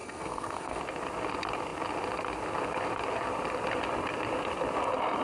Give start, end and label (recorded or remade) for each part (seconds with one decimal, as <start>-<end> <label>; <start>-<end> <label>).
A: 0.0-0.8 remade; 0.8-5.2 recorded